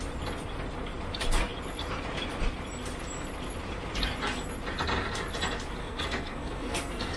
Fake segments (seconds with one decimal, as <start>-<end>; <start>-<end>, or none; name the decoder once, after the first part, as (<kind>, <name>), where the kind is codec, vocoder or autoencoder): 5.8-7.2 (codec, SNAC)

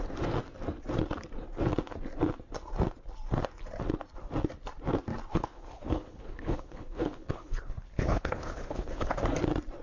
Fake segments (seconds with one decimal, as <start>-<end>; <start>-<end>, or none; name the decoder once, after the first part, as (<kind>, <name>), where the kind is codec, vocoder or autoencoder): 5.3-9.2 (codec, HILCodec)

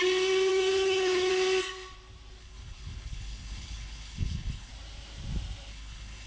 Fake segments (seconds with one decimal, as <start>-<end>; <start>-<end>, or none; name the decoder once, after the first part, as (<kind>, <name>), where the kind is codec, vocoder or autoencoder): 0.5-1.3 (codec, HILCodec); 2.4-4.7; 5.7-6.3

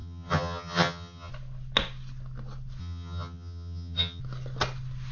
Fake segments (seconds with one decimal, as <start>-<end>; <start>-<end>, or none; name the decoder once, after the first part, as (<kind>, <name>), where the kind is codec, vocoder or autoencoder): 0.0-1.3 (vocoder, HiFi-GAN); 2.8-4.2

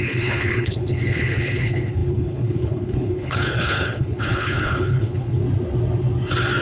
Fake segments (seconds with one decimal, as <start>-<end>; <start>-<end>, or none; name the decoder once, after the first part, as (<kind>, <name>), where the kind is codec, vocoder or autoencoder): 0.0-5.4 (codec, HILCodec)

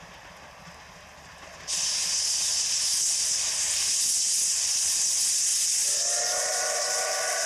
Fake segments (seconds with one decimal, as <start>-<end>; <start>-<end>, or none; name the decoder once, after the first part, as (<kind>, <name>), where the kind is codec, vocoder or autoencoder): none

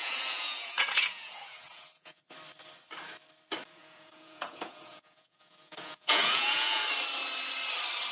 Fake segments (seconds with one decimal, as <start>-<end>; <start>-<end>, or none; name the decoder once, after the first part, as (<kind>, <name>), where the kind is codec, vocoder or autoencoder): 0.0-2.2 (vocoder, Vocos); 3.8-6.8